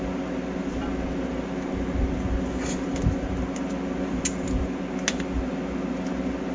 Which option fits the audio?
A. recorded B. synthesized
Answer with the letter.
A